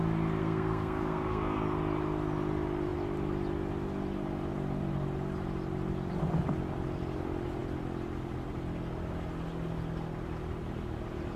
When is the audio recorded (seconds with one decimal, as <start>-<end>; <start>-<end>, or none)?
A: 0.0-0.4; 1.6-11.4